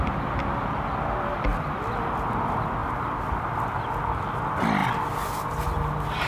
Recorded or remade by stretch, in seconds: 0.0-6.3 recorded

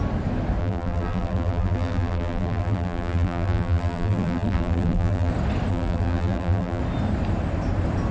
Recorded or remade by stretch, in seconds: 0.0-0.6 recorded; 0.6-5.3 remade; 5.3-5.7 recorded; 5.7-6.8 remade; 6.8-8.1 recorded

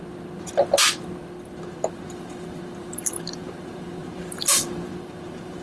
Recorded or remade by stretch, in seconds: 0.0-1.9 recorded; 1.9-5.6 remade